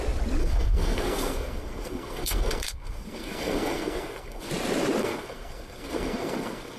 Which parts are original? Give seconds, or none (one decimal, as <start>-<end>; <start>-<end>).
0.0-0.4; 4.5-5.0

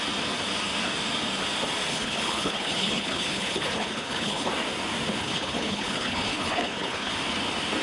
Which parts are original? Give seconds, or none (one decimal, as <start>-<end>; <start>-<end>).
0.0-1.9; 4.5-5.2; 7.1-7.8

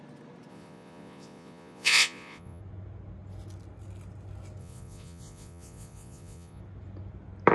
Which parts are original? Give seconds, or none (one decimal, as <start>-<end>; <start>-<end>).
0.0-0.5; 2.6-4.6; 6.6-7.5

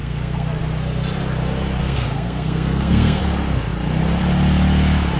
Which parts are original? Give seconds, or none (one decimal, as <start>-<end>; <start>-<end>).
0.6-1.8; 3.2-5.2

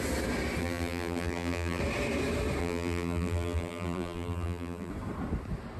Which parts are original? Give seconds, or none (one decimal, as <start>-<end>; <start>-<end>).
0.0-0.6; 1.8-2.6; 4.9-5.8

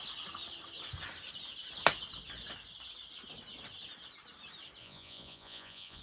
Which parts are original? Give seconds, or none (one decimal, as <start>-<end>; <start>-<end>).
0.0-4.8

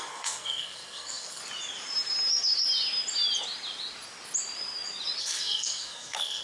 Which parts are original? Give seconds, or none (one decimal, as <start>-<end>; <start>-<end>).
1.4-5.2